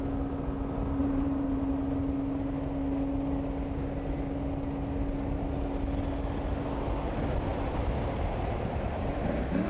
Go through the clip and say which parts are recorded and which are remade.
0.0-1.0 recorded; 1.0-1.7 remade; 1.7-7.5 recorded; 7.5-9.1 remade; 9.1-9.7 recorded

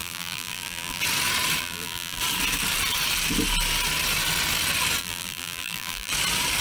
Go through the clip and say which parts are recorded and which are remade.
0.0-1.0 remade; 1.0-1.6 recorded; 1.6-2.2 remade; 2.2-5.0 recorded; 5.0-6.1 remade; 6.1-6.6 recorded

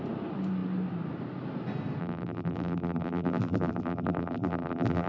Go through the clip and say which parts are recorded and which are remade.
0.0-2.0 recorded; 2.0-5.1 remade

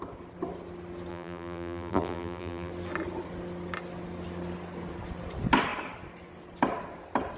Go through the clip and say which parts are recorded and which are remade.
0.0-1.1 recorded; 1.1-2.7 remade; 2.7-7.4 recorded

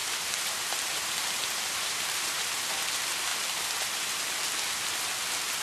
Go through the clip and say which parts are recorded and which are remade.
0.0-2.7 remade; 2.7-5.6 recorded

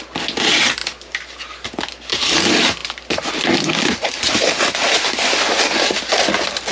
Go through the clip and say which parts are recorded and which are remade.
0.0-6.7 recorded

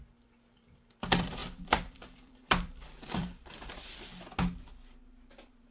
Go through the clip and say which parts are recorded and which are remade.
0.0-4.1 remade; 4.1-5.3 recorded; 5.3-5.7 remade